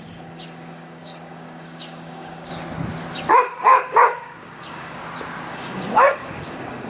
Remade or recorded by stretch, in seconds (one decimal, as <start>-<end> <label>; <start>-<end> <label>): 0.0-2.5 remade; 2.5-3.3 recorded; 3.3-5.0 remade; 5.0-5.5 recorded; 5.5-6.9 remade